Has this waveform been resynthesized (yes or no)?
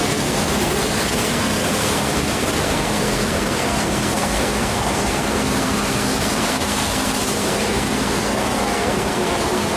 yes